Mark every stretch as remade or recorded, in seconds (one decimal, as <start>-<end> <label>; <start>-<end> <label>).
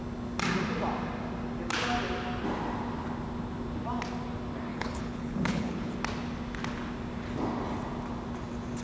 0.0-4.7 recorded; 4.7-5.9 remade; 5.9-8.8 recorded